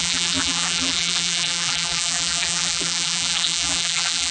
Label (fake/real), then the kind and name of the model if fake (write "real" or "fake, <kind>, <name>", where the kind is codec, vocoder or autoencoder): fake, vocoder, BigVGAN v2